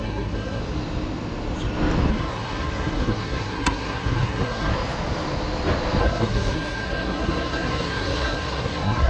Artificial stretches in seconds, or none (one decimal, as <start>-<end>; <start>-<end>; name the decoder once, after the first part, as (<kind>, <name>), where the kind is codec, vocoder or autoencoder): 0.0-0.6 (codec, SNAC); 2.1-4.7; 6.0-9.1